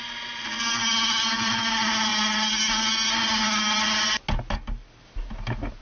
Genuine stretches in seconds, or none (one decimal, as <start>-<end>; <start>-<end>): 0.0-5.8